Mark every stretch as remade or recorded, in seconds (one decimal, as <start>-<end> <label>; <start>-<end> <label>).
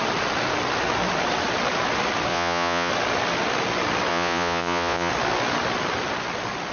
0.0-2.3 recorded; 2.3-2.9 remade; 2.9-4.1 recorded; 4.1-5.1 remade; 5.1-6.7 recorded